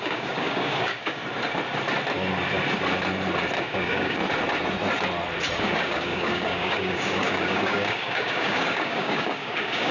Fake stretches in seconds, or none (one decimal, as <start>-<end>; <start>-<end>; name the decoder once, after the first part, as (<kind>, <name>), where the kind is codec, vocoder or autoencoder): 0.0-1.2 (codec, DAC); 3.6-4.2; 5.6-9.9